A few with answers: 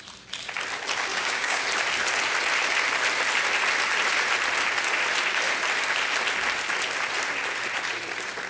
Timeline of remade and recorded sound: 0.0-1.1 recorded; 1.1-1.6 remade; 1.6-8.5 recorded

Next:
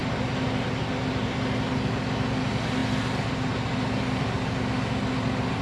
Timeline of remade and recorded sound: 0.0-5.6 recorded

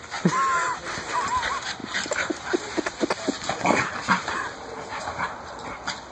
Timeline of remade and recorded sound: 0.0-1.8 recorded; 1.8-5.5 remade; 5.5-6.1 recorded

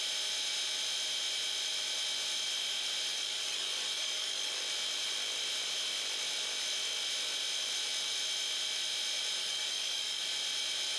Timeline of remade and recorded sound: 0.0-3.1 recorded; 3.1-4.6 remade; 4.6-9.4 recorded; 9.4-10.2 remade; 10.2-11.0 recorded

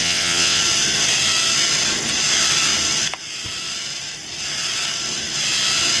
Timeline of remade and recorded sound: 0.0-0.6 remade; 0.6-6.0 recorded

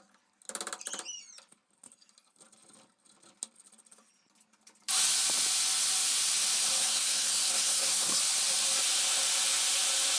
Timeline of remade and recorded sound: 0.0-6.8 recorded; 6.8-8.2 remade; 8.2-10.2 recorded

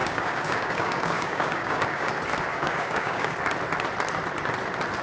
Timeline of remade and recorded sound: 0.0-2.1 remade; 2.1-2.5 recorded; 2.5-3.3 remade; 3.3-5.0 recorded

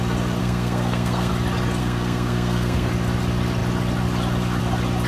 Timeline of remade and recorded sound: 0.0-0.4 recorded; 0.4-1.3 remade; 1.3-1.8 recorded; 1.8-2.9 remade; 2.9-5.1 recorded